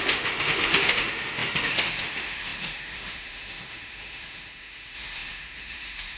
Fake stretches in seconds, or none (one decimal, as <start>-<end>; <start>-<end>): 0.0-6.2